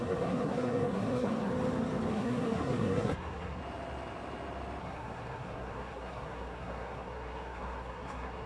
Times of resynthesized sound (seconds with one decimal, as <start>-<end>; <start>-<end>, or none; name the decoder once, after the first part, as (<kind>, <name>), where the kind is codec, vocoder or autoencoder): 0.0-1.5 (codec, SNAC); 2.1-3.6; 4.8-8.5